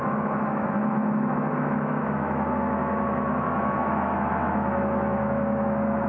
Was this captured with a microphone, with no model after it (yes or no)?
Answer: no